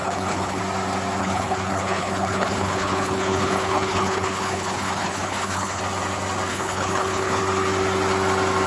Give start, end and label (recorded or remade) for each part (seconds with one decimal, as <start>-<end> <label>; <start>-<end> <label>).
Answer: 0.0-0.6 remade; 0.6-1.2 recorded; 1.2-5.8 remade; 5.8-6.5 recorded; 6.5-7.4 remade; 7.4-8.7 recorded